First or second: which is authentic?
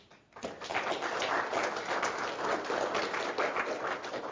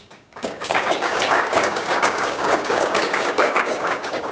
first